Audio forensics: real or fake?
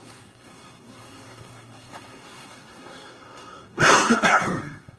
fake